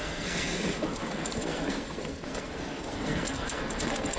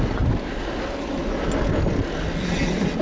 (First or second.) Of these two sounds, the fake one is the first